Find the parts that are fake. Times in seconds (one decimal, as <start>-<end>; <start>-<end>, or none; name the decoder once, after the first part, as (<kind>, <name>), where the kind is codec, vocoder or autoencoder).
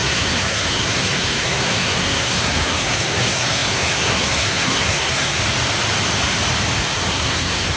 0.0-5.4 (codec, SNAC); 7.1-7.8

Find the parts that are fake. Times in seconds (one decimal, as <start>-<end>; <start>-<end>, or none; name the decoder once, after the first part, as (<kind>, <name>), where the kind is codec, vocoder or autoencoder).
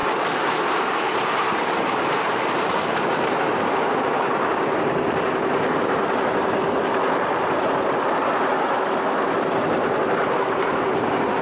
none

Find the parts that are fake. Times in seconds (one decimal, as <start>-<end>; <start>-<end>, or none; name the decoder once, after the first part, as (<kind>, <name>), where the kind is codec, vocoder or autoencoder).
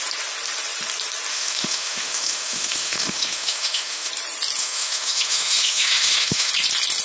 1.3-4.1 (autoencoder, DAC-VAE); 4.6-6.5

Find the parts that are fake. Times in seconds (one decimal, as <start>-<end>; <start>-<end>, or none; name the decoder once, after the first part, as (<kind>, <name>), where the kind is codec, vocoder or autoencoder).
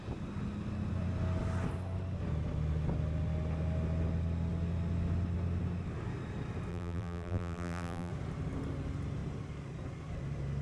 6.7-8.1 (vocoder, BigVGAN v2)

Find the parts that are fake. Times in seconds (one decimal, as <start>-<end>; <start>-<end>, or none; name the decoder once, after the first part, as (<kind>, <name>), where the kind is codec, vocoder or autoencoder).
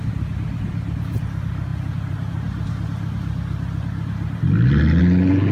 none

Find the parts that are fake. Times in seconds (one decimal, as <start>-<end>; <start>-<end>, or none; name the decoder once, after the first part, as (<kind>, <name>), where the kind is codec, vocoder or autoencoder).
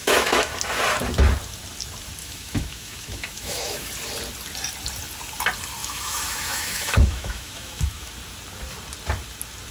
0.0-0.5 (autoencoder, DAC-VAE); 2.2-3.9; 5.8-8.1